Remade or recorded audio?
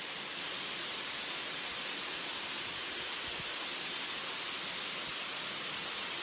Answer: recorded